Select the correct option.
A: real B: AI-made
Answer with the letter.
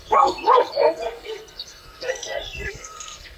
B